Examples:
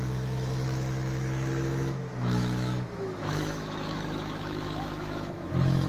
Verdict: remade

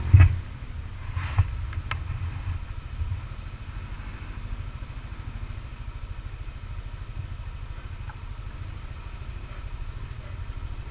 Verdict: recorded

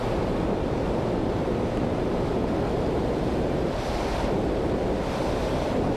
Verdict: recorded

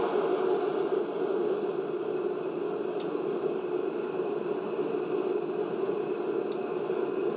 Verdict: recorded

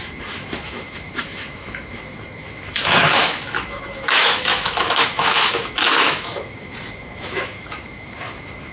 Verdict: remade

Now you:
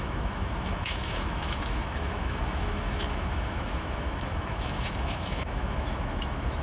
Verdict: remade